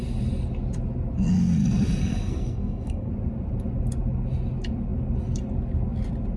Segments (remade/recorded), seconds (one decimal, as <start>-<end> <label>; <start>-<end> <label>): 0.0-2.0 recorded; 2.0-3.1 remade; 3.1-6.4 recorded